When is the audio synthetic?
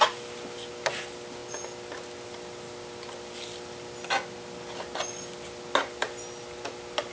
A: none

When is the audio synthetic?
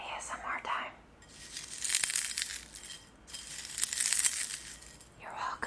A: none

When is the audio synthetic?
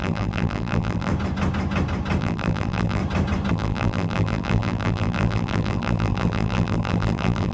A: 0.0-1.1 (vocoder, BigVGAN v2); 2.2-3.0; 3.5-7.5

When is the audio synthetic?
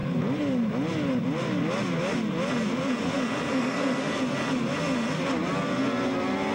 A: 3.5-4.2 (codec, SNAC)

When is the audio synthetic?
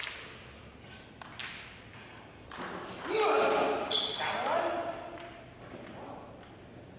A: none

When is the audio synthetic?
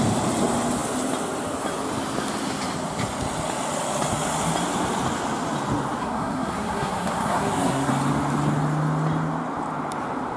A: 6.0-7.9 (codec, SNAC)